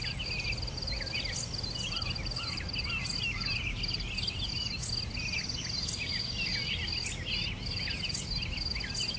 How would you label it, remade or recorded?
recorded